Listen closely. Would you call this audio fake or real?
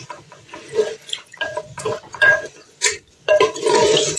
fake